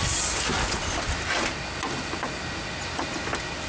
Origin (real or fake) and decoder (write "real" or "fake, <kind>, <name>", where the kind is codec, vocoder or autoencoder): real